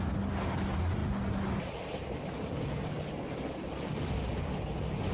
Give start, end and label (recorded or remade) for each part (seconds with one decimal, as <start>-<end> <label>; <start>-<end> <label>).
0.0-5.1 recorded